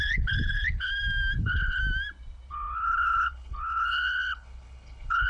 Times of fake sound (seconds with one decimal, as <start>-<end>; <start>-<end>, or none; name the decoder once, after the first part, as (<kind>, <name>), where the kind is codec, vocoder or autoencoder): 0.0-0.9 (codec, HILCodec); 1.4-1.8; 2.5-5.3